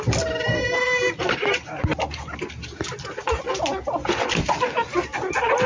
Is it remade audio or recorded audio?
recorded